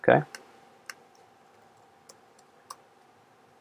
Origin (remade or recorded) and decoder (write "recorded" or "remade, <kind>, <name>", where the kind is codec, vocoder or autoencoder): recorded